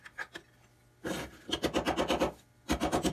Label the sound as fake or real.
real